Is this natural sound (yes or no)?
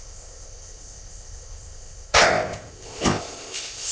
no